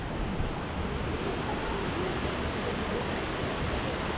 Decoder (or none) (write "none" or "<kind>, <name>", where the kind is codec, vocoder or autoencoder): none